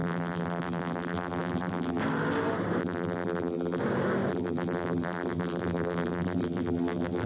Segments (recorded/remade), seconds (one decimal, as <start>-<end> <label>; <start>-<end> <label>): 0.0-2.0 remade; 2.0-2.8 recorded; 2.8-3.8 remade; 3.8-4.3 recorded; 4.3-7.3 remade